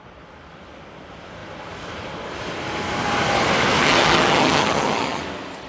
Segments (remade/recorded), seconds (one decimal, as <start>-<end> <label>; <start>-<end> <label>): 0.0-3.8 recorded; 3.8-5.2 remade; 5.2-5.7 recorded